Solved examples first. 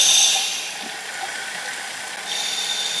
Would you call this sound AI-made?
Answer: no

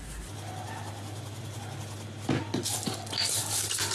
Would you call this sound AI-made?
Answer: no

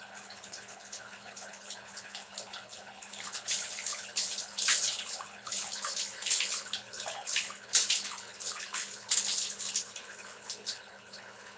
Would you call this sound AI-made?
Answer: yes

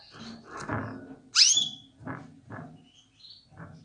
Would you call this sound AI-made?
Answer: no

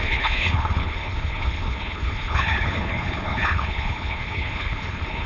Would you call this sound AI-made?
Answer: yes